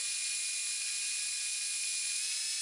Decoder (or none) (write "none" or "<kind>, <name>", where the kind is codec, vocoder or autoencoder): none